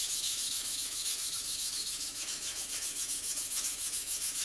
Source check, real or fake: fake